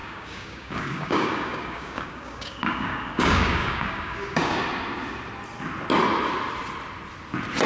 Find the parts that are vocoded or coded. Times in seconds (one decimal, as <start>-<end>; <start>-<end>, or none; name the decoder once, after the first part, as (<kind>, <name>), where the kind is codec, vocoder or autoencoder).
0.0-4.6 (codec, DAC)